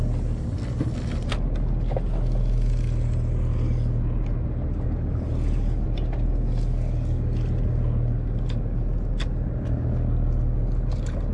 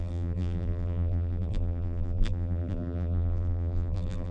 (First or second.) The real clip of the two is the first